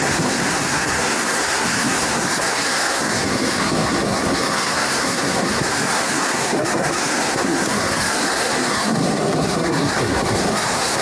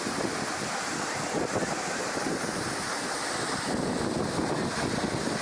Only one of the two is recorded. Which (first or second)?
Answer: second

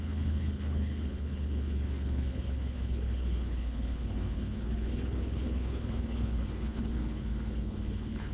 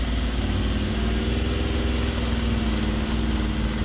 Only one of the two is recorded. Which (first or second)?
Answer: second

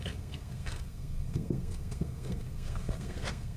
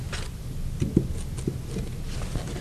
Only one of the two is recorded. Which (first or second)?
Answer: second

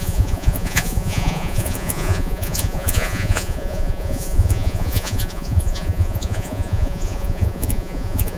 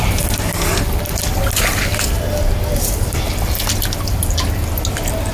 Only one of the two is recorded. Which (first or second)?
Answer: second